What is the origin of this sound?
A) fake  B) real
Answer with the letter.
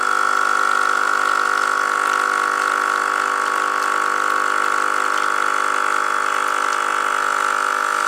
B